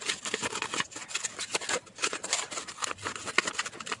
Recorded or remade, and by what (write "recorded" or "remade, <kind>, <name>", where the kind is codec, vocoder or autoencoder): recorded